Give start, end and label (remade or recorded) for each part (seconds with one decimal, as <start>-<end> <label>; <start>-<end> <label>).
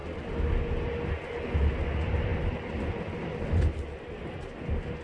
0.0-2.3 recorded; 2.3-4.2 remade; 4.2-5.0 recorded